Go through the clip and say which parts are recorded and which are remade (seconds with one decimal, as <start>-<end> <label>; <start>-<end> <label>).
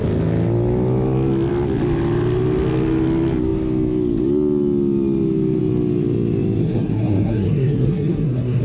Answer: 0.0-6.6 recorded; 6.6-8.6 remade